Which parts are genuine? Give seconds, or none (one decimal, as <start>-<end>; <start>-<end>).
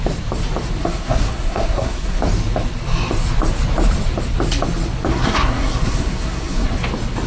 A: 0.0-0.8; 2.2-5.1; 6.8-7.3